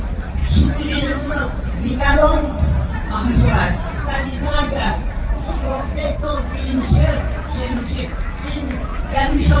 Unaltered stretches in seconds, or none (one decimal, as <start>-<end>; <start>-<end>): none